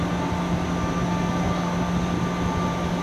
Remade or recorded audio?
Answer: recorded